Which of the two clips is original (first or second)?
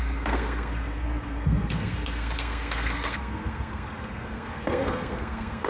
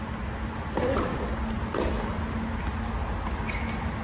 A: second